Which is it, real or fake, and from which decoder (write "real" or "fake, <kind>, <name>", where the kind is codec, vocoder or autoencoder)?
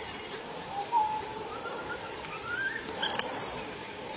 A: fake, vocoder, BigVGAN v2